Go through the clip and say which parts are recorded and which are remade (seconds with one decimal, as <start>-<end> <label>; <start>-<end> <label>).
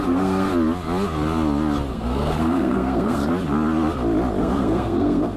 0.0-0.5 remade; 0.5-1.9 recorded; 1.9-3.3 remade; 3.3-4.4 recorded; 4.4-5.4 remade